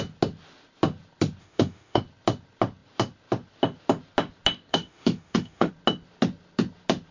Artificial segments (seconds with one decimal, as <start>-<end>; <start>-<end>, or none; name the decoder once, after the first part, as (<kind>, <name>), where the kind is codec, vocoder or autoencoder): 1.4-2.0 (autoencoder, DAC-VAE); 4.7-5.7